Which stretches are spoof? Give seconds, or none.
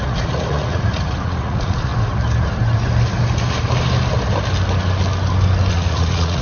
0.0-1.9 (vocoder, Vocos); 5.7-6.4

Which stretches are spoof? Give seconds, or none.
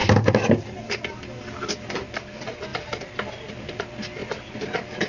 none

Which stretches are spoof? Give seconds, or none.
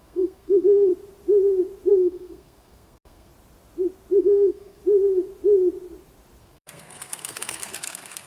0.0-0.9 (codec, SNAC); 1.9-3.3; 4.2-4.8; 6.4-8.3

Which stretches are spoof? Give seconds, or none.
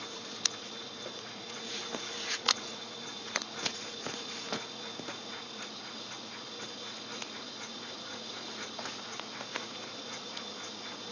0.0-11.1 (vocoder, Vocos)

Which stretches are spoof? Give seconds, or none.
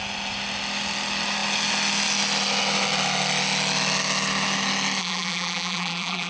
5.0-6.3 (vocoder, BigVGAN v2)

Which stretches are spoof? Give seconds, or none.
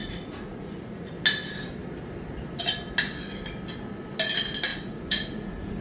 0.0-1.1 (vocoder, Vocos); 4.7-5.8